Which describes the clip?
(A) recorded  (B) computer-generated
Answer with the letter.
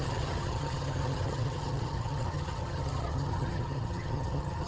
B